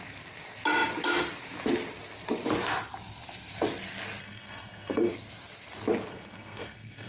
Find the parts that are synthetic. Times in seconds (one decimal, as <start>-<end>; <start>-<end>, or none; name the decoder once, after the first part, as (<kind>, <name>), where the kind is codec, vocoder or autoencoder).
4.2-5.1 (codec, SNAC); 6.1-7.1